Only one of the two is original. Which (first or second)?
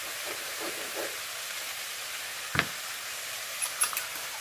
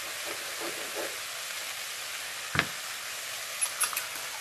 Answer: second